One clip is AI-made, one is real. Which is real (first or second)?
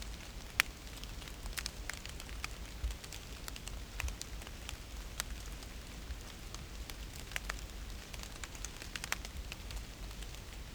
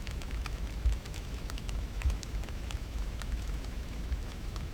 first